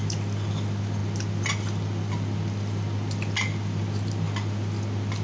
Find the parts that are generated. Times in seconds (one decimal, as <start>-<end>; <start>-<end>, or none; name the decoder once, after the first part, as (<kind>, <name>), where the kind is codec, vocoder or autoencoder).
none